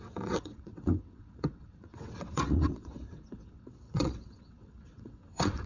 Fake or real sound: fake